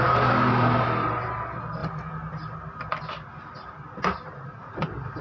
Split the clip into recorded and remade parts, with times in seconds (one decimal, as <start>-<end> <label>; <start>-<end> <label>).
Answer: 0.0-5.2 recorded